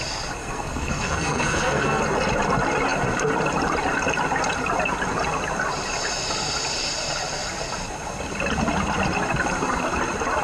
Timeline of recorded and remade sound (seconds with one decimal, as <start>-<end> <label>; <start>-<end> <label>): 0.0-0.4 recorded; 0.4-2.0 remade; 2.0-10.4 recorded